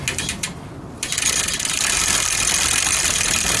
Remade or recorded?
recorded